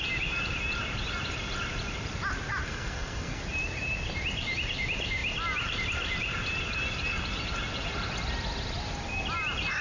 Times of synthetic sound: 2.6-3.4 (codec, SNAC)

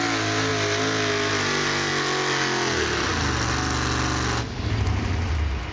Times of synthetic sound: none

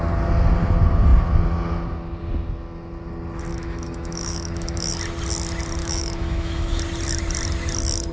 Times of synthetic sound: 3.5-4.9 (autoencoder, DAC-VAE); 5.8-6.8